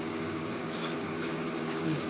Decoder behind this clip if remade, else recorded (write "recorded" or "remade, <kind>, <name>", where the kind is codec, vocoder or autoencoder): remade, codec, DAC